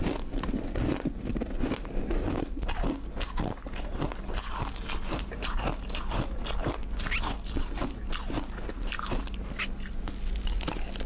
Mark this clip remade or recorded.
recorded